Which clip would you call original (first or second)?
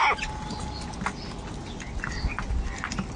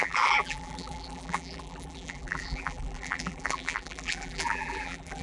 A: first